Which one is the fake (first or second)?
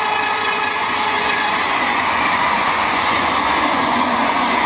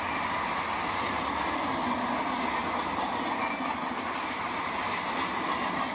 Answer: first